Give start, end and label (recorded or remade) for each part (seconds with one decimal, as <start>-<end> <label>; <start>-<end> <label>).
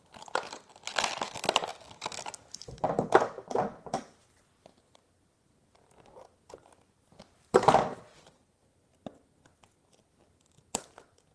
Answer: 0.0-11.3 recorded